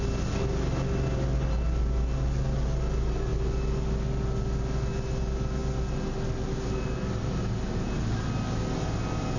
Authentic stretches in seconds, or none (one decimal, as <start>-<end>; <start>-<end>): 0.0-9.4